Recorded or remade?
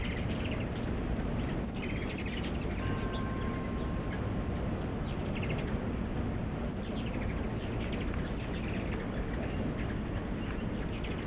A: recorded